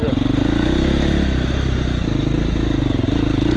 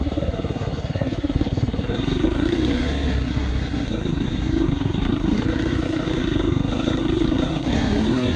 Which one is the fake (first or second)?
second